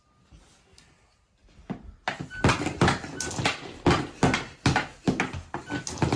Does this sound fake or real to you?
real